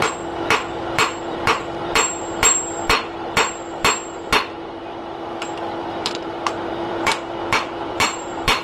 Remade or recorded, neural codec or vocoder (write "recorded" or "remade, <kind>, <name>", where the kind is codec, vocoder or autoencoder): remade, vocoder, BigVGAN v2